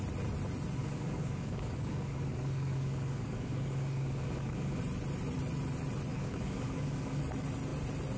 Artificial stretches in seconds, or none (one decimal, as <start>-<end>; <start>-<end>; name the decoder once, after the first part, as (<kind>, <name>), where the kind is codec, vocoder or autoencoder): 0.8-4.8 (codec, DAC); 6.1-7.2